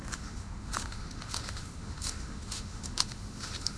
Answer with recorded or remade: remade